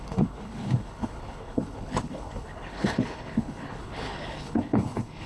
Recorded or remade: remade